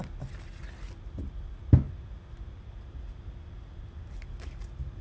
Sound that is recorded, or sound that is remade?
recorded